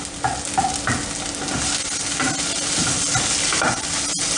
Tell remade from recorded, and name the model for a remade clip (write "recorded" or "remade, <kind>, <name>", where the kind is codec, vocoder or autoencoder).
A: recorded